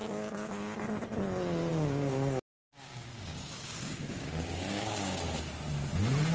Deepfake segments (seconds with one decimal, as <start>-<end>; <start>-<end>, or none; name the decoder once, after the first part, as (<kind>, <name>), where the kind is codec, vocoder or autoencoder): 0.0-0.8 (codec, DAC); 1.7-5.2